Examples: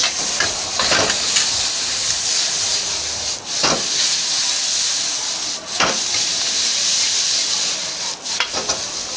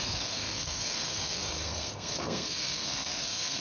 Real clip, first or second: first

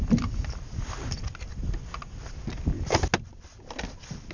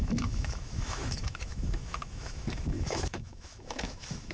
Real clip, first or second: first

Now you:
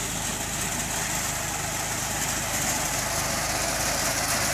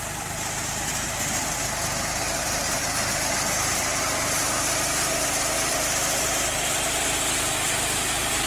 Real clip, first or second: first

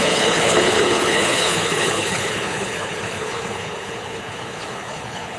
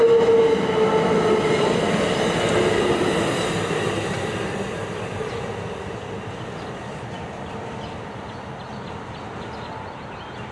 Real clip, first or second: second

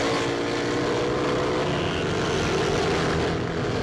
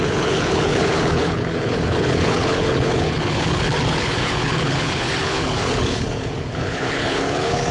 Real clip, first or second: first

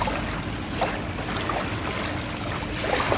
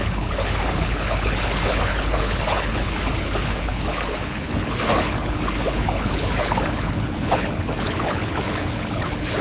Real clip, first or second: first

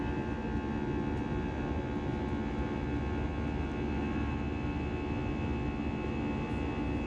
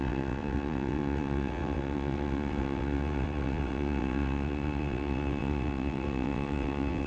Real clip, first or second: first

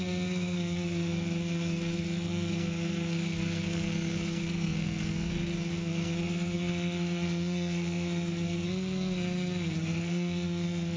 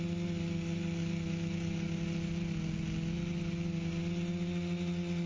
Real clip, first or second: second